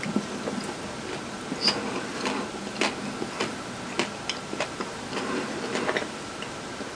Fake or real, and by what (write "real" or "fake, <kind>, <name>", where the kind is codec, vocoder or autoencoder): real